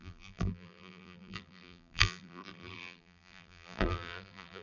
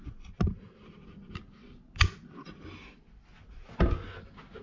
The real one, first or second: second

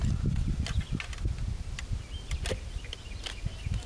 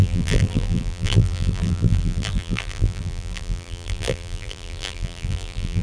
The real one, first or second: first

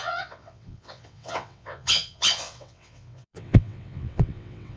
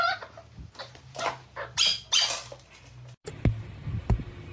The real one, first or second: second